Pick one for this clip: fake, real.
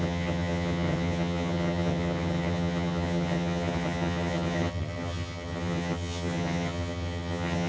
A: fake